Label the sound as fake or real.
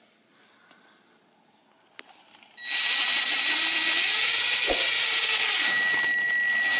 real